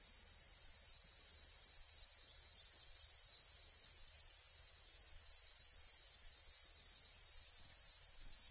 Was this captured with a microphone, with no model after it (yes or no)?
yes